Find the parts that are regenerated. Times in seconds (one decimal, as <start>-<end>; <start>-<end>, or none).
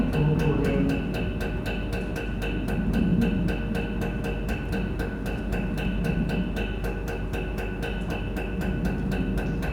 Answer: none